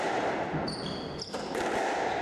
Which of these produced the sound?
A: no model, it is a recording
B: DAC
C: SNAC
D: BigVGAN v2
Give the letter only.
A